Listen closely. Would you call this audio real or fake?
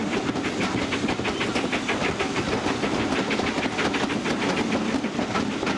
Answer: real